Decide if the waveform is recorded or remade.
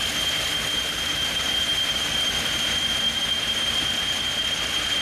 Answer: recorded